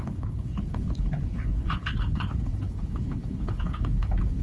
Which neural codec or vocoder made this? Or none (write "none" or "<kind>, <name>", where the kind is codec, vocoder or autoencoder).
codec, HILCodec